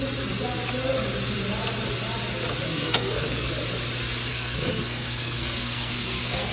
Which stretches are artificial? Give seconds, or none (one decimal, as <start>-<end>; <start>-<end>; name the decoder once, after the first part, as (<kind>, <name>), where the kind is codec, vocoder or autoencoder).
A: 2.7-3.5 (codec, SNAC); 4.3-6.5